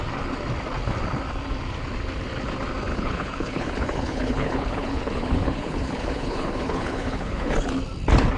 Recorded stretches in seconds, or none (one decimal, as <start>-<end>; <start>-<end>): 0.0-2.9; 7.5-8.4